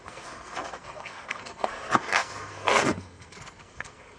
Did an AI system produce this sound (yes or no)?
yes